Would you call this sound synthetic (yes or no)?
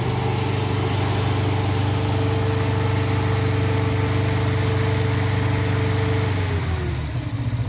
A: no